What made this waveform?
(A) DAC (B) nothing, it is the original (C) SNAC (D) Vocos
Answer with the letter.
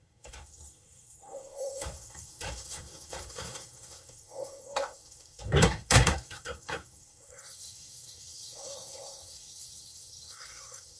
C